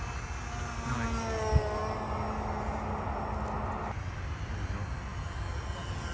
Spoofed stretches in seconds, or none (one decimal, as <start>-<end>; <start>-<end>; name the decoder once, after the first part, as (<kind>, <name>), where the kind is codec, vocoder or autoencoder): none